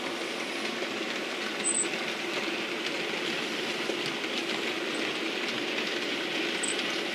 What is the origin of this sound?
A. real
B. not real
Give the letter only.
A